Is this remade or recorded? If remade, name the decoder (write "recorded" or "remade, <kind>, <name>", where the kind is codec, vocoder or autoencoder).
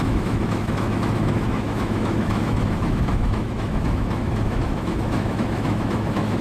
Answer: remade, autoencoder, DAC-VAE